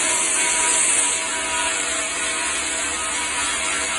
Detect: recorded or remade recorded